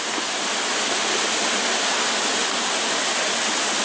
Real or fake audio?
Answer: real